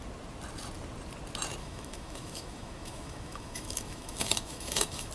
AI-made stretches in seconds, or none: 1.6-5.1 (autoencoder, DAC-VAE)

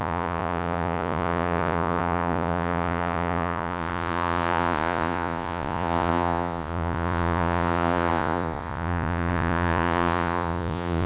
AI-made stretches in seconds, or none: 0.0-11.1 (vocoder, Vocos)

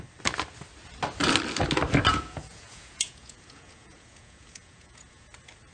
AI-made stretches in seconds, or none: 2.1-5.3 (vocoder, Vocos)

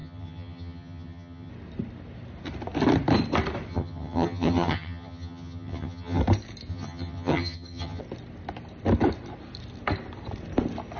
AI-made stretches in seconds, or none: 0.0-1.5 (vocoder, HiFi-GAN); 3.7-6.2; 6.7-8.0

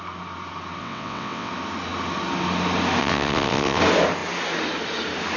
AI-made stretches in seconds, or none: 0.8-1.5 (vocoder, WaveNeXt); 3.0-3.8

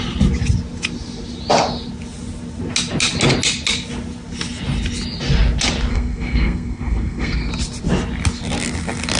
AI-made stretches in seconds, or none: 5.9-7.5 (codec, SNAC)

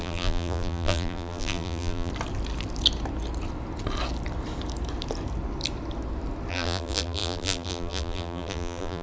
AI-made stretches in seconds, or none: 0.0-2.1 (vocoder, BigVGAN v2); 6.5-9.0

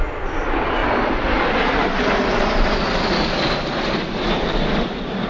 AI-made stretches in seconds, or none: none